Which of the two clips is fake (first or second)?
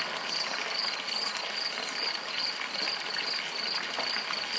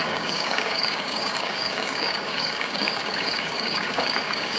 second